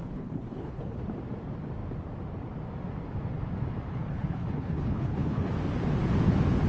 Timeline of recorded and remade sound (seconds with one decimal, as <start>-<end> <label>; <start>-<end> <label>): 0.0-1.0 remade; 1.0-3.9 recorded; 3.9-5.5 remade; 5.5-6.7 recorded